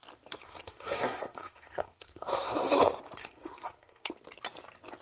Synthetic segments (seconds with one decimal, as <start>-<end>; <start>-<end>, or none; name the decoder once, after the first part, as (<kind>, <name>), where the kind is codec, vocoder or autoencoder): 0.4-2.8 (codec, SNAC); 3.2-4.1